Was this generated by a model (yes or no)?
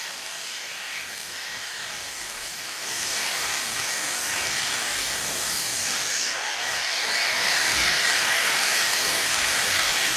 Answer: yes